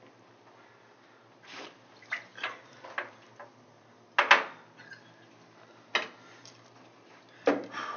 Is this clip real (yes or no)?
yes